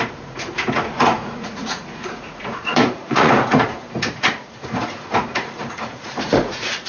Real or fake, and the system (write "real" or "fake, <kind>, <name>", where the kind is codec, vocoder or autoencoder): fake, vocoder, Vocos